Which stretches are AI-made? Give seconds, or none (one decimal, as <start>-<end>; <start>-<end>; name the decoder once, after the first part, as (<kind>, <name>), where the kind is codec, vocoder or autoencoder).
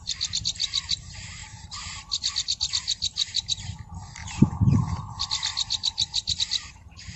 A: none